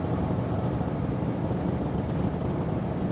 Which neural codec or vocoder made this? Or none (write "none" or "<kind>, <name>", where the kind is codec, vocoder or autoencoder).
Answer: none